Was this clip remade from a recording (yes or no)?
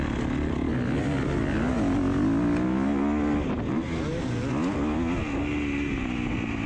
no